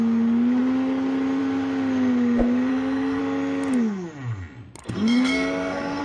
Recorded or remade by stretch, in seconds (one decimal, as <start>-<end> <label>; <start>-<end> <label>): 0.0-2.7 recorded; 2.7-3.2 remade; 3.2-4.8 recorded; 4.8-6.0 remade